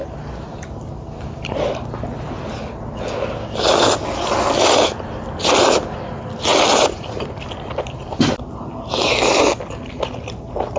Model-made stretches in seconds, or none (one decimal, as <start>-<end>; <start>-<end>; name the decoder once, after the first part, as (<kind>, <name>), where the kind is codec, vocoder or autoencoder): none